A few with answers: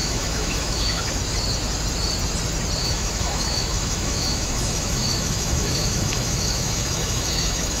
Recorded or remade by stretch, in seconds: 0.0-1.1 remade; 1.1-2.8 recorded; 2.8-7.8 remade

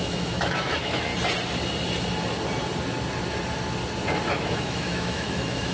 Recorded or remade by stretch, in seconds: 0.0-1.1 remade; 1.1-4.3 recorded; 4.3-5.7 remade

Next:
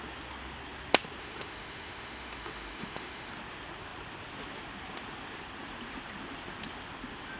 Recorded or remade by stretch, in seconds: 0.0-1.2 recorded; 1.2-3.3 remade; 3.3-7.4 recorded

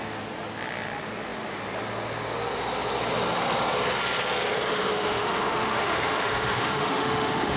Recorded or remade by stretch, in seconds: 0.0-4.7 recorded; 4.7-7.6 remade

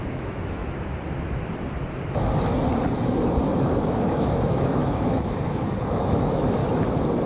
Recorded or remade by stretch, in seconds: 0.0-0.6 remade; 0.6-3.4 recorded; 3.4-6.6 remade; 6.6-7.3 recorded